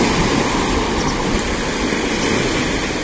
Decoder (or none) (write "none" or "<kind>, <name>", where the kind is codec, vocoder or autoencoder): none